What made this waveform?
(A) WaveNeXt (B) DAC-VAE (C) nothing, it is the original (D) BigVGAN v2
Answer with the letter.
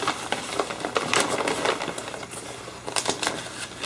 C